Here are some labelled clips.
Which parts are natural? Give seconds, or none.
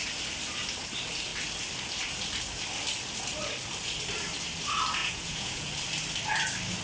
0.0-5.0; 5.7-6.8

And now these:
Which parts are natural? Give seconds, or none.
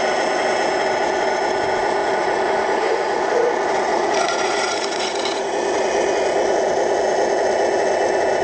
0.0-2.0; 3.5-3.9; 5.5-8.4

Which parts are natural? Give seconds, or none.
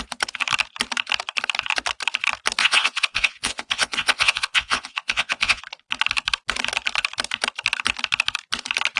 0.0-2.6; 5.6-9.0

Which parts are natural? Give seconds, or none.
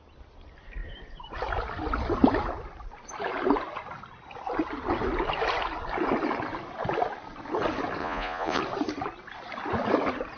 0.0-8.0; 8.6-10.4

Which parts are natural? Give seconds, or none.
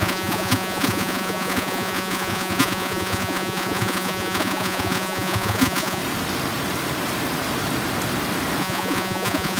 6.0-8.6